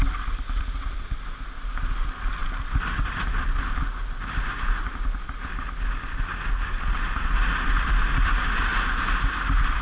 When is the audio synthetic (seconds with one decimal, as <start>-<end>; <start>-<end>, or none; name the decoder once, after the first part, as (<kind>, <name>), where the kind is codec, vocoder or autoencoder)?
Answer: none